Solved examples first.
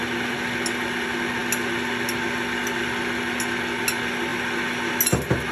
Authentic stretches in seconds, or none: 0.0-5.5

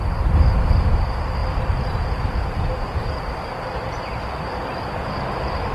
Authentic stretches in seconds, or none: 0.0-5.7

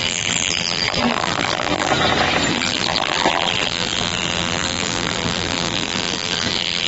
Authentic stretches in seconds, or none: 1.9-2.5